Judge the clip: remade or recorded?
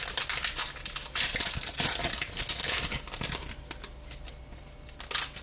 recorded